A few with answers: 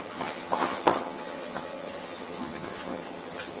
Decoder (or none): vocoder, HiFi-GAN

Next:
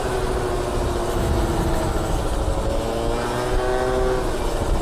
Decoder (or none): none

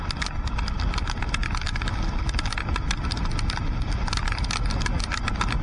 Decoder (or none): none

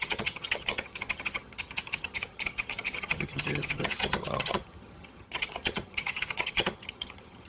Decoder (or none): vocoder, HiFi-GAN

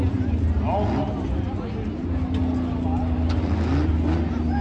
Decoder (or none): none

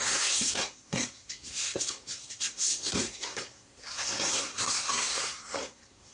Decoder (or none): codec, SNAC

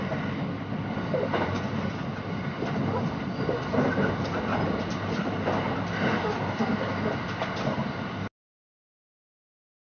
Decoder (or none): none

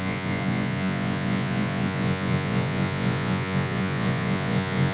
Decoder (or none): vocoder, Vocos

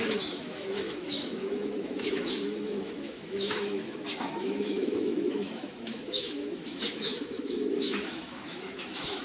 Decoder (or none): autoencoder, DAC-VAE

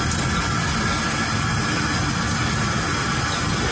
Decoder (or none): none